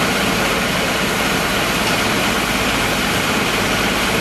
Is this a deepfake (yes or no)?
no